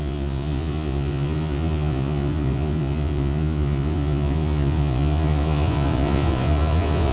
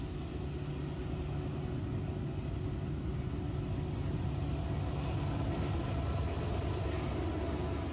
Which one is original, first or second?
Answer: second